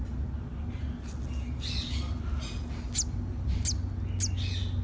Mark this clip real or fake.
real